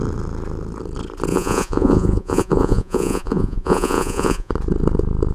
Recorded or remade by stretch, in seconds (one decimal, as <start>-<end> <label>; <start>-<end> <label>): 0.0-1.3 recorded; 1.3-4.5 remade; 4.5-5.3 recorded